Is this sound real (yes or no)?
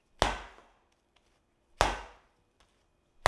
yes